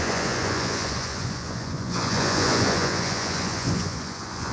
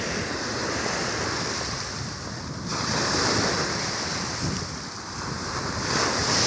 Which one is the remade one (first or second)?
first